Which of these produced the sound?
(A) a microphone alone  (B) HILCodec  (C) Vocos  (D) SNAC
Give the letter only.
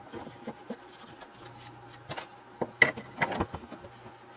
A